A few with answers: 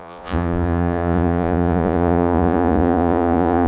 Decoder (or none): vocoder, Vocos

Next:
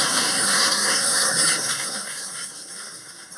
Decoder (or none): codec, SNAC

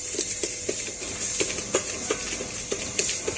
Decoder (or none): none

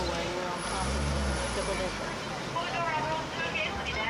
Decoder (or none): none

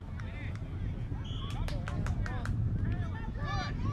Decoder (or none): none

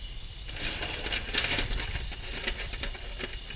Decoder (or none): none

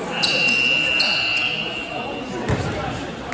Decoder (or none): none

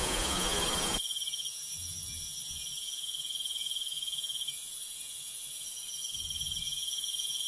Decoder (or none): vocoder, Vocos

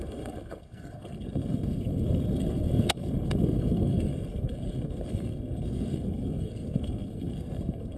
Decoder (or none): codec, SNAC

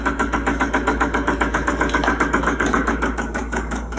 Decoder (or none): codec, DAC